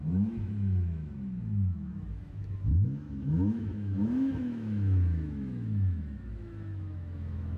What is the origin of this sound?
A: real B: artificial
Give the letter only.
B